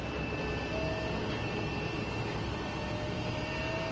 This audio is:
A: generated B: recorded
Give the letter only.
B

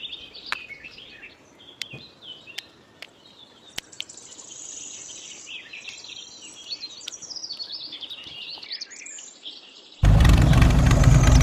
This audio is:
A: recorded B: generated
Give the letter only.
B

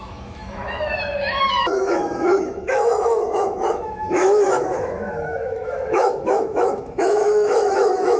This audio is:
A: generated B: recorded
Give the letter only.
A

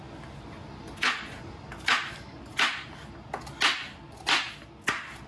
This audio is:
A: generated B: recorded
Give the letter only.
B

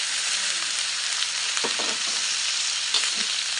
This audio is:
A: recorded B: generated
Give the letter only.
B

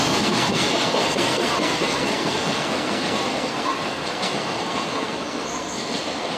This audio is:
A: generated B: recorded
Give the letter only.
A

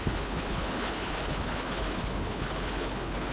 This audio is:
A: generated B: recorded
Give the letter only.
A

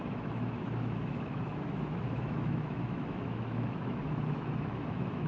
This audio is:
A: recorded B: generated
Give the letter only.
B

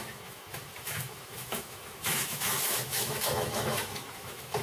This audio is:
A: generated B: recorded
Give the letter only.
A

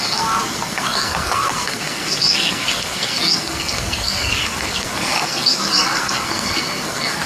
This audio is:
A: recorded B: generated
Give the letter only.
B